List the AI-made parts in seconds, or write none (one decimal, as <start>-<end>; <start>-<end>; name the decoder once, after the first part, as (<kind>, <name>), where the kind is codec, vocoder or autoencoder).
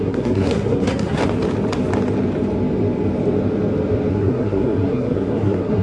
0.0-1.2 (codec, SNAC); 4.1-5.8